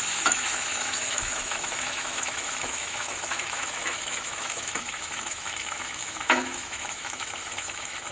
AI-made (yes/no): yes